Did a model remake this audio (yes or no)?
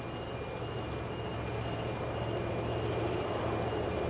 no